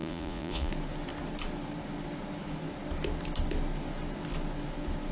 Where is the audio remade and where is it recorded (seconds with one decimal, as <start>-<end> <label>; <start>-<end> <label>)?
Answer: 0.0-0.7 remade; 0.7-5.1 recorded